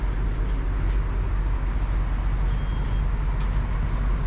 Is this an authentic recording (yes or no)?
yes